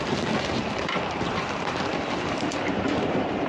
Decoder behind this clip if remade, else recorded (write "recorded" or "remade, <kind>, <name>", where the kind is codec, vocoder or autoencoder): remade, vocoder, BigVGAN v2